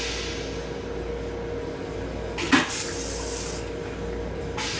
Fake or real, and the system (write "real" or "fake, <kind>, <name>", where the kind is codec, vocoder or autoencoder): real